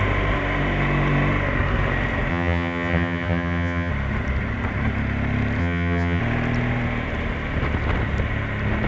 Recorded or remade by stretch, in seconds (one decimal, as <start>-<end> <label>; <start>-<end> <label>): 0.0-2.3 recorded; 2.3-3.9 remade; 3.9-5.6 recorded; 5.6-6.2 remade; 6.2-8.9 recorded